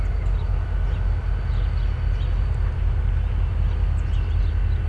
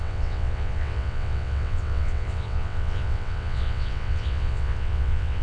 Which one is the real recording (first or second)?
first